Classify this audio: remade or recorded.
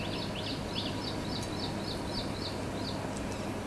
recorded